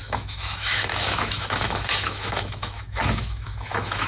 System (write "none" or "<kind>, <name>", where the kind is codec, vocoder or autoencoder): autoencoder, DAC-VAE